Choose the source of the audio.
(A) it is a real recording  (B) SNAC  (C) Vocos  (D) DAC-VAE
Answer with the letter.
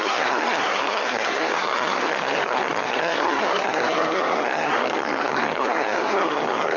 B